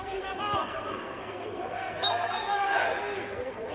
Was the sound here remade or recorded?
remade